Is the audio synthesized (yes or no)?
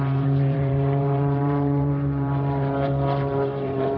yes